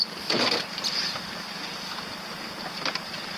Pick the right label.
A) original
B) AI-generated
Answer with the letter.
B